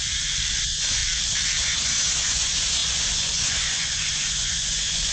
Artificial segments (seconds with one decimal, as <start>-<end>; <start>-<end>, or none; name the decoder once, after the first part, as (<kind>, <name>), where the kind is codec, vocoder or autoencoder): 0.6-1.0 (vocoder, Vocos); 1.6-5.1